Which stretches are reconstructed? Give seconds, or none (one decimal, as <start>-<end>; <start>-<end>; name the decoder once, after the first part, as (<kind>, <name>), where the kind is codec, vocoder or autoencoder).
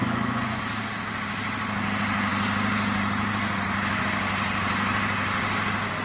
0.0-0.6 (vocoder, Vocos)